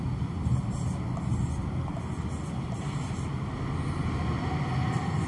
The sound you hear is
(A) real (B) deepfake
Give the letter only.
A